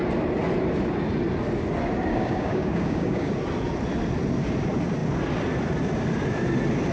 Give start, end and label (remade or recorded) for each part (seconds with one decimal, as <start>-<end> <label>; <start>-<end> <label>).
0.0-2.1 recorded; 2.1-3.3 remade; 3.3-6.9 recorded

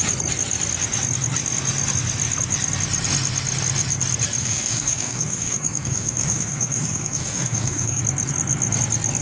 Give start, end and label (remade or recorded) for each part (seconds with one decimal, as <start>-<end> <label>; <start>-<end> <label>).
0.0-4.4 recorded; 4.4-8.0 remade; 8.0-9.2 recorded

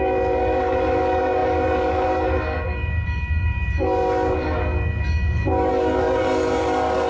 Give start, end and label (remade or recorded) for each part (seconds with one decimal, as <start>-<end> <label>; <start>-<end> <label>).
0.0-7.1 remade

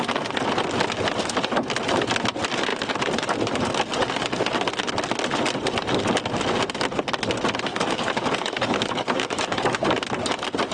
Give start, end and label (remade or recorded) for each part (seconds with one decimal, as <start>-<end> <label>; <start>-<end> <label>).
0.0-7.7 recorded; 7.7-9.8 remade; 9.8-10.7 recorded